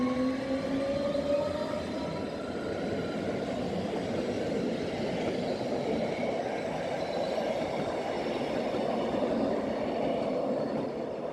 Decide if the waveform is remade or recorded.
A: recorded